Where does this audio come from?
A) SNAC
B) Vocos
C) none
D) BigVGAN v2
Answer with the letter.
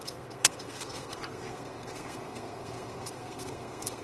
A